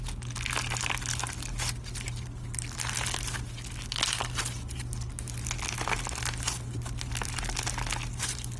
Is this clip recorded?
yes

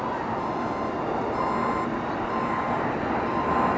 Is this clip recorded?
yes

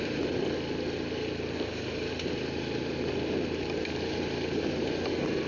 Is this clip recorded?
yes